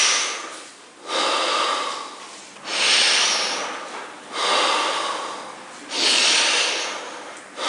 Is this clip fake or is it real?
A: real